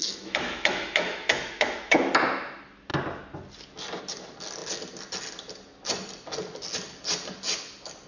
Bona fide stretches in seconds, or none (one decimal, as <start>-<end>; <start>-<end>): 2.1-8.1